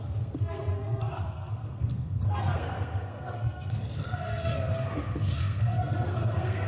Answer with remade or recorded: remade